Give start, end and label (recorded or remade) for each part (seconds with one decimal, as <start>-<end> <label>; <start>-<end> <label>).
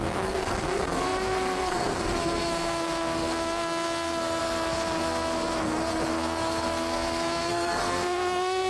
0.0-8.7 remade